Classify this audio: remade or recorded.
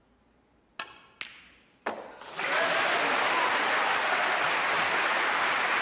recorded